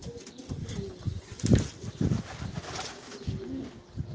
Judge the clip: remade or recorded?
recorded